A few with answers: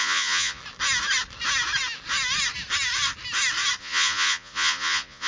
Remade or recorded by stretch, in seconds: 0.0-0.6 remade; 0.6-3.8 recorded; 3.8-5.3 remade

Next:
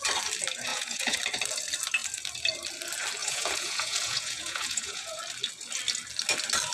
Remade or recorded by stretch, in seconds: 0.0-0.7 recorded; 0.7-1.2 remade; 1.2-3.2 recorded; 3.2-5.2 remade; 5.2-6.7 recorded

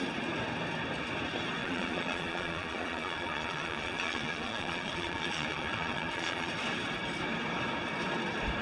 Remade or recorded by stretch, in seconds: 0.0-1.6 recorded; 1.6-6.5 remade; 6.5-8.6 recorded

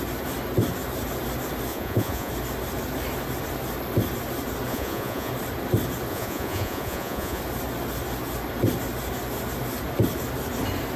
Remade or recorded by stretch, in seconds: 0.0-1.7 recorded; 1.7-2.3 remade; 2.3-4.7 recorded; 4.7-5.3 remade; 5.3-6.1 recorded; 6.1-7.4 remade; 7.4-11.0 recorded